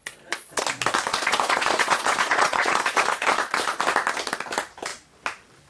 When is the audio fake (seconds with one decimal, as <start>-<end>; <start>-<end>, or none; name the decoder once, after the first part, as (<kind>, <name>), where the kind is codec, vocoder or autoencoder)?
0.0-0.6 (vocoder, Vocos); 1.1-3.8